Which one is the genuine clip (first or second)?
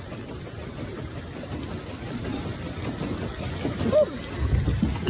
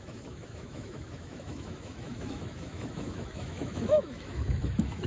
first